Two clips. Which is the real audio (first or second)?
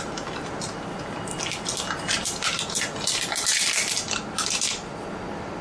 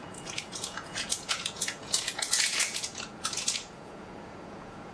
first